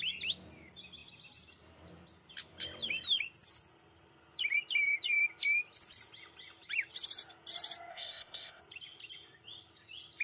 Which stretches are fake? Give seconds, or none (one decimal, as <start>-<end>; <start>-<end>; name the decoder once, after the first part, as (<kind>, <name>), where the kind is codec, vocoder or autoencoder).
7.9-8.6 (codec, ZipCodec)